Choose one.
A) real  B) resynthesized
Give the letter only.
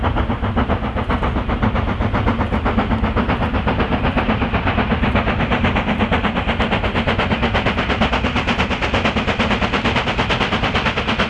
A